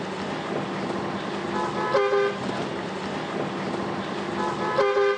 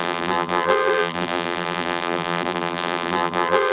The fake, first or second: second